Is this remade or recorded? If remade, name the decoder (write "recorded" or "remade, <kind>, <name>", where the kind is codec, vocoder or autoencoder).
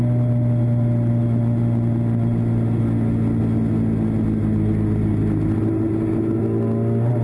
recorded